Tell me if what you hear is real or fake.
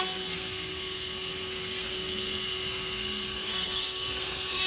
fake